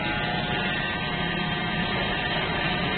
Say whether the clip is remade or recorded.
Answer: remade